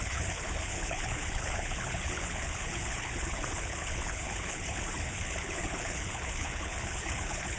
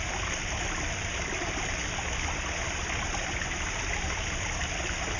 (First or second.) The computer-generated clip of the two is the first